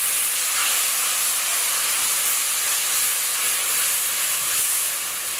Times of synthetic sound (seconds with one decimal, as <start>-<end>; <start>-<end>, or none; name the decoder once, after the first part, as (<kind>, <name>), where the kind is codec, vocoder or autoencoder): 4.2-4.9 (autoencoder, DAC-VAE)